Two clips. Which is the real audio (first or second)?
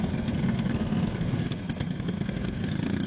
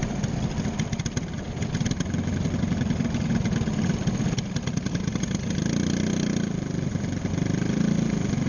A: second